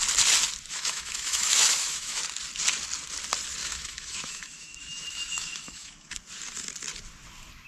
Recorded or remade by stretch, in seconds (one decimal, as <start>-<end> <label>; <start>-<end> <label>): 0.0-0.7 recorded; 0.7-2.2 remade; 2.2-3.6 recorded; 3.6-6.1 remade; 6.1-7.7 recorded